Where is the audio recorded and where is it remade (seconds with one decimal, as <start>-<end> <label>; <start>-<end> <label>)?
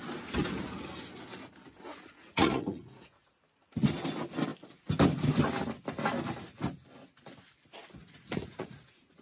0.0-1.9 recorded; 1.9-3.3 remade; 3.3-8.0 recorded; 8.0-9.2 remade